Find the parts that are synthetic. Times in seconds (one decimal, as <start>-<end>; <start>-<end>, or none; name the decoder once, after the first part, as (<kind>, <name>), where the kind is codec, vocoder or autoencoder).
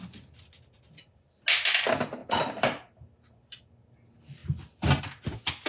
none